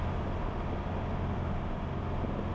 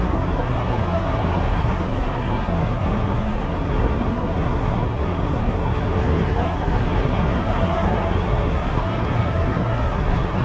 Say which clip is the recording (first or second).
first